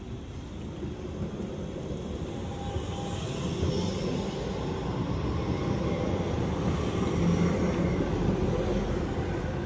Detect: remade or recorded recorded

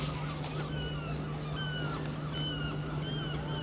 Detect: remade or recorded recorded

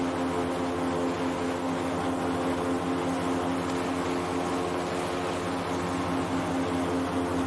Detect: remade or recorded recorded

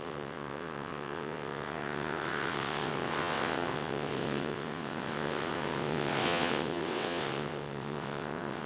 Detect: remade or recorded remade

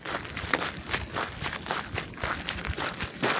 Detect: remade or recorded recorded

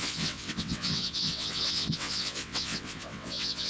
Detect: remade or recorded remade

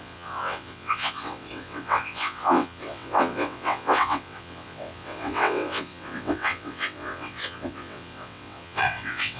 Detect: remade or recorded remade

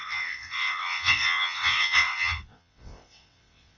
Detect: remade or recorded remade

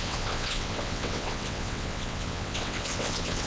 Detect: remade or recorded remade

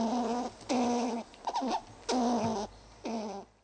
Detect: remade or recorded recorded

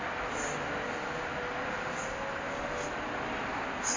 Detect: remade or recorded recorded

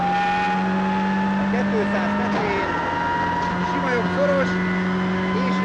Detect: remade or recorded recorded